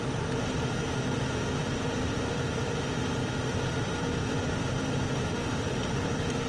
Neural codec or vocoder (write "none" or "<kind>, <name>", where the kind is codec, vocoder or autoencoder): vocoder, BigVGAN v2